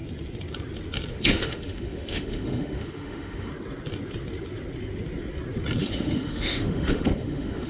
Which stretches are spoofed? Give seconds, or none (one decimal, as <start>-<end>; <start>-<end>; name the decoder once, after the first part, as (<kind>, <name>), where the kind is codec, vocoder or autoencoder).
1.1-3.5 (autoencoder, DAC-VAE); 5.8-7.7